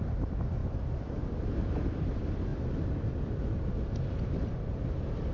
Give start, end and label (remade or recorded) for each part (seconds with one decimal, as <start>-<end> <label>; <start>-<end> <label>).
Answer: 0.0-0.6 recorded; 0.6-1.6 remade; 1.6-5.3 recorded